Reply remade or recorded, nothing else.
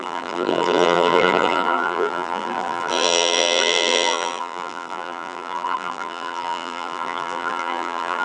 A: remade